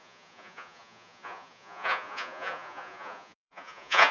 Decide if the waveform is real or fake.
fake